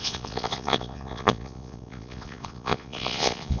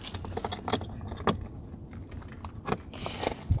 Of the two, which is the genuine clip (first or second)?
second